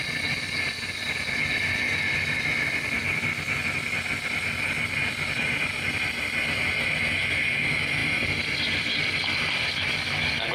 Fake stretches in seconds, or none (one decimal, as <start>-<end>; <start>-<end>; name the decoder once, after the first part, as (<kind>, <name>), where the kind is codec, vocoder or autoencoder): none